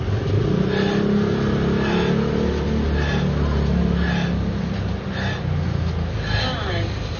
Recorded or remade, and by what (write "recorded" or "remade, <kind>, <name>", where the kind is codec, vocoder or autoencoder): recorded